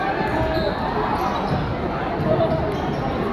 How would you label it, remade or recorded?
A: recorded